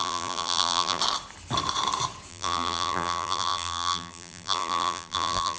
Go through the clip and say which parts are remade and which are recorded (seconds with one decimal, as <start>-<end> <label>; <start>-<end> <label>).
0.0-1.0 remade; 1.0-2.3 recorded; 2.3-5.6 remade